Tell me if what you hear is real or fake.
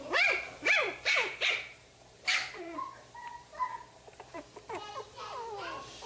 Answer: fake